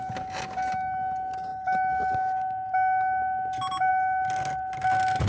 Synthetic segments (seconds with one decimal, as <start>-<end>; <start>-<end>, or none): none